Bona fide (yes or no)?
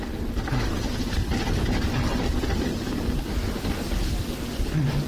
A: yes